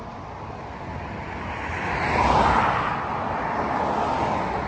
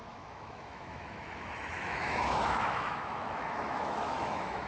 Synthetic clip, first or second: second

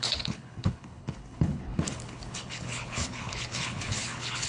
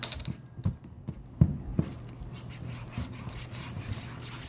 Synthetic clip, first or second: first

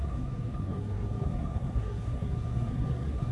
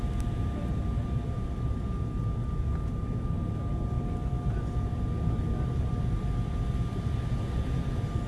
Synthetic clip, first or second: first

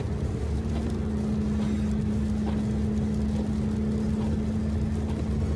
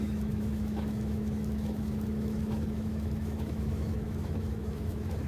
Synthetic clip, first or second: second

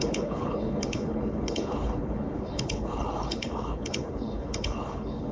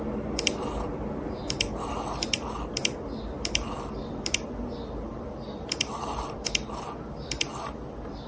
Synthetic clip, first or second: first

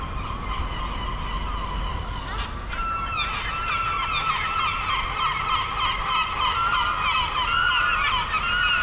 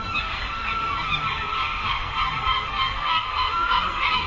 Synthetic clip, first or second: second